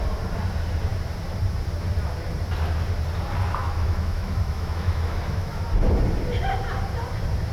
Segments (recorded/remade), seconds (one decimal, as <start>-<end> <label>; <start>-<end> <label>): 0.0-3.6 recorded; 3.6-5.6 remade; 5.6-7.5 recorded